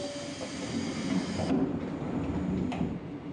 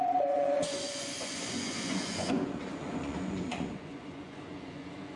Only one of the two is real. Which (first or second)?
first